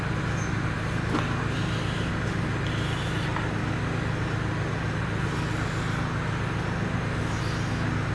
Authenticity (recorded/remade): recorded